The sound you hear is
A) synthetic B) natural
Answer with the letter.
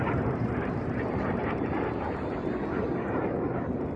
A